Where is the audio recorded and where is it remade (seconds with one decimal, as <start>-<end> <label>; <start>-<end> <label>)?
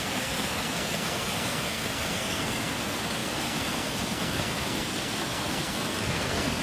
0.0-6.6 remade